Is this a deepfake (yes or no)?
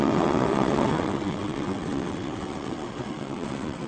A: yes